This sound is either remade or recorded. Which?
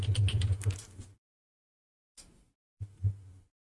recorded